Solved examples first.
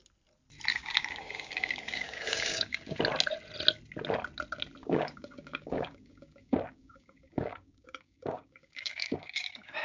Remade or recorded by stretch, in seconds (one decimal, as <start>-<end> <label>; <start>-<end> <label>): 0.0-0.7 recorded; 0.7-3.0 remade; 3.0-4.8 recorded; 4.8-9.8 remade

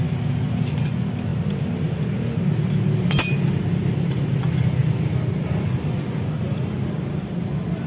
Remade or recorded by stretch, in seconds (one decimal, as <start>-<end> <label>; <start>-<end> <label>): 0.0-7.9 recorded

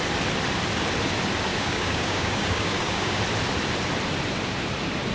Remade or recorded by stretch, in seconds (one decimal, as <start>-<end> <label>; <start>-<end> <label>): 0.0-1.5 recorded; 1.5-3.2 remade; 3.2-5.1 recorded